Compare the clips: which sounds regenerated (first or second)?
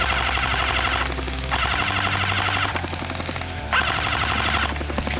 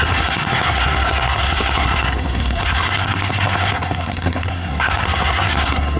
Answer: second